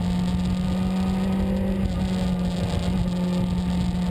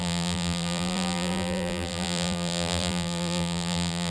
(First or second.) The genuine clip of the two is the first